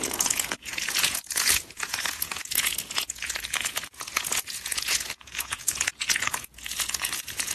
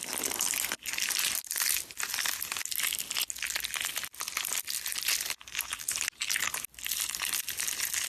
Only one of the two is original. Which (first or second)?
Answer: second